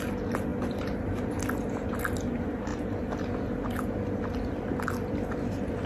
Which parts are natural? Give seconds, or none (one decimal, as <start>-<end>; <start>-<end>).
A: 0.0-0.5; 1.3-5.9

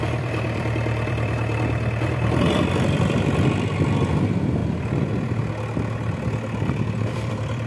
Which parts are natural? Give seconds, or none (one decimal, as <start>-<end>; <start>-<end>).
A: 4.6-7.1